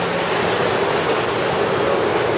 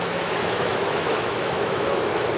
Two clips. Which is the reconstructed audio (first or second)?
second